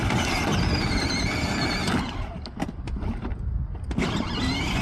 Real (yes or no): yes